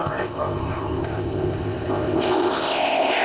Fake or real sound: fake